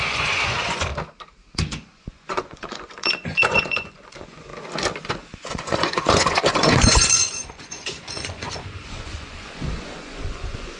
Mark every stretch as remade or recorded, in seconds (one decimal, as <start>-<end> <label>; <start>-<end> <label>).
0.0-0.9 remade; 0.9-1.6 recorded; 1.6-4.5 remade; 4.5-5.1 recorded; 5.1-10.8 remade